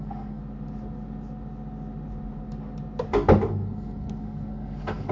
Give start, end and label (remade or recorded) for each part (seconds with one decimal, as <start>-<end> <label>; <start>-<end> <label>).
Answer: 0.0-0.4 remade; 0.4-3.5 recorded; 3.5-5.1 remade